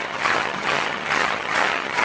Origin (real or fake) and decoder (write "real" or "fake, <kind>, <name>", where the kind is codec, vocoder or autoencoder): fake, vocoder, HiFi-GAN